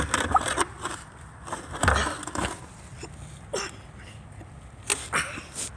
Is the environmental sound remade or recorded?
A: recorded